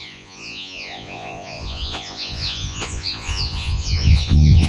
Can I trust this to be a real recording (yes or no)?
no